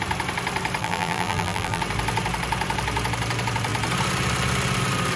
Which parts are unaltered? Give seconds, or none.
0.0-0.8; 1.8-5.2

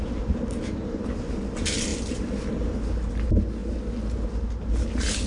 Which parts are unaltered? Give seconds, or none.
0.0-5.3

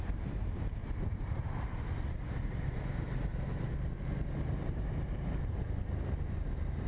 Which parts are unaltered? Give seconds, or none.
none

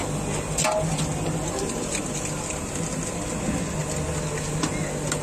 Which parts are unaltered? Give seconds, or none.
0.0-5.2

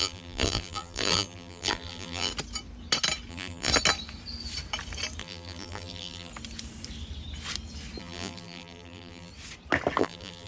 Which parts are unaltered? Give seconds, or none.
2.3-3.3; 3.7-5.2; 6.3-8.0; 9.3-10.0

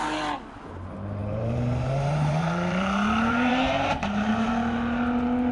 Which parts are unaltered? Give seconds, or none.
0.0-1.2; 4.5-5.5

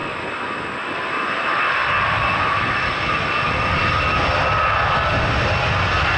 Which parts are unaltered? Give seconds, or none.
0.0-6.2